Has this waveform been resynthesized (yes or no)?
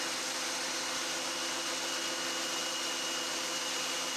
no